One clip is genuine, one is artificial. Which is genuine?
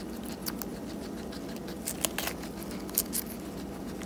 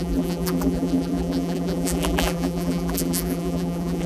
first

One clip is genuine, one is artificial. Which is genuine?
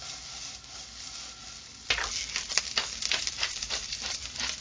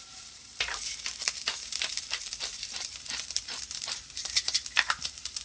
first